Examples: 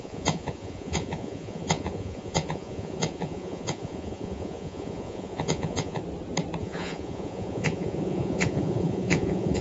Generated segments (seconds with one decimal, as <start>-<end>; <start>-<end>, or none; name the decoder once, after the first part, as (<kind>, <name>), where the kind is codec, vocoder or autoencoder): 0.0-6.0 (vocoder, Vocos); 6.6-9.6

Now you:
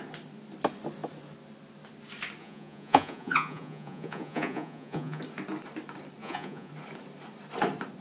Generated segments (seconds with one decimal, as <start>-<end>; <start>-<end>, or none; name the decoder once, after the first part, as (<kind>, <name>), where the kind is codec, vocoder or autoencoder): 2.4-5.2 (vocoder, Vocos); 6.2-6.7

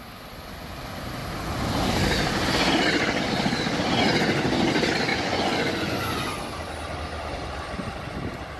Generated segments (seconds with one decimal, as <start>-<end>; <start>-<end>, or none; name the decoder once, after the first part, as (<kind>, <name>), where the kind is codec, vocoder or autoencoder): 5.1-6.3 (vocoder, Vocos)